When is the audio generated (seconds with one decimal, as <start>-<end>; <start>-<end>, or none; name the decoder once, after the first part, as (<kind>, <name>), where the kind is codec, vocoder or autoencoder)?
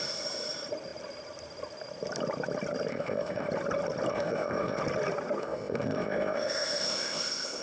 2.9-3.5 (codec, ZipCodec); 4.1-4.8; 5.4-7.6